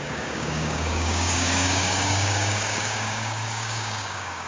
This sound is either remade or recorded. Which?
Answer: remade